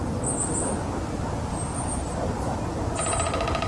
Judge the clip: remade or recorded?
recorded